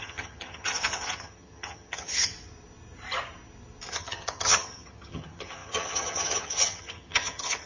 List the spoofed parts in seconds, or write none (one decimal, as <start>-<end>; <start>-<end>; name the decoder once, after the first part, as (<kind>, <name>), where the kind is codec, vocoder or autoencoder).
0.0-2.3 (vocoder, HiFi-GAN); 3.9-7.7